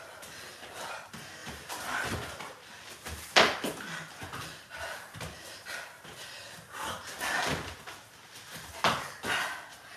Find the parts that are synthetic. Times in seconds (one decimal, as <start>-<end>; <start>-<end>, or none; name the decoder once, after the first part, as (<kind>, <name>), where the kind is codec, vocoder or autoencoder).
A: none